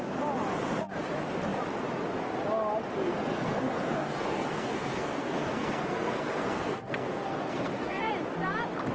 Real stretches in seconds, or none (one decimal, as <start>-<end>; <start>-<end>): 0.0-3.0; 8.1-8.9